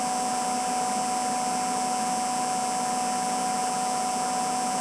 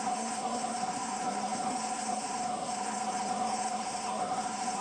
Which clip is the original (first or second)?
first